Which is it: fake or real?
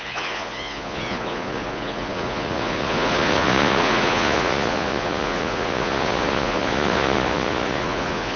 fake